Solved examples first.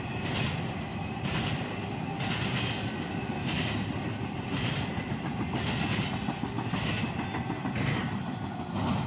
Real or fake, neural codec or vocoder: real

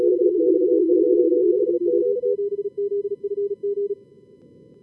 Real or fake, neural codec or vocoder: real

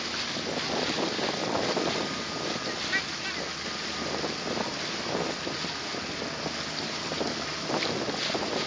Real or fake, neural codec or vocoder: real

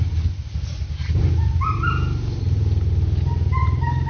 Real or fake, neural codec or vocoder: real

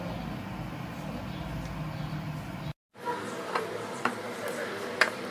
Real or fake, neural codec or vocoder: real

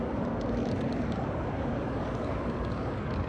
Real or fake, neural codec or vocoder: fake, codec, DAC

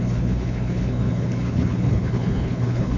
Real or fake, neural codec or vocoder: fake, codec, HILCodec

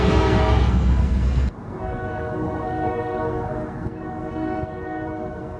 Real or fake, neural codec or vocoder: fake, codec, SNAC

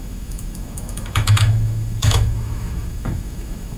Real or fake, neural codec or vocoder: fake, autoencoder, DAC-VAE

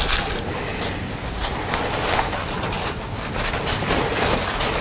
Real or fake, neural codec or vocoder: real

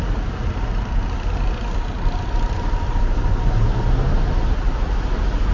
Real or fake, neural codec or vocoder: real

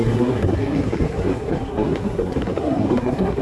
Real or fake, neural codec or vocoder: fake, codec, SNAC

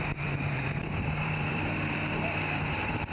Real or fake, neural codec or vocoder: fake, vocoder, BigVGAN v2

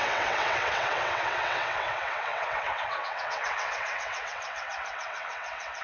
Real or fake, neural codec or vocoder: fake, vocoder, WaveNeXt